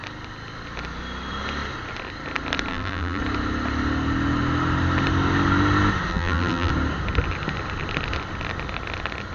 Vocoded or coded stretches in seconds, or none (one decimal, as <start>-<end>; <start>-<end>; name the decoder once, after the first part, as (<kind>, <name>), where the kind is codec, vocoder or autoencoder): 2.7-3.2 (vocoder, BigVGAN v2); 6.1-6.7